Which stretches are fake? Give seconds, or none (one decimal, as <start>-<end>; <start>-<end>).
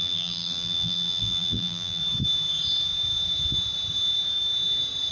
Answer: 0.0-2.0